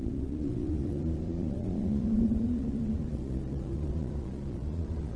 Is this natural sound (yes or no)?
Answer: no